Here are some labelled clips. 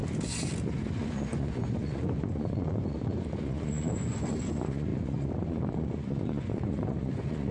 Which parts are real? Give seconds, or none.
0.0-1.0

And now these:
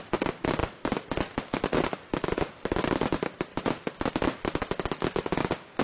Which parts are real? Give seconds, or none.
0.0-5.8